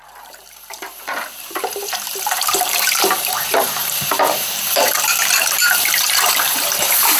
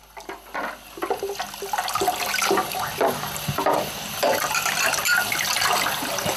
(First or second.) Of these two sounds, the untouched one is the second